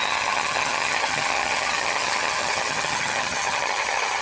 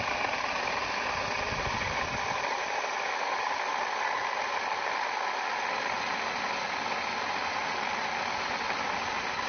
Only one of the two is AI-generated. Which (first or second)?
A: first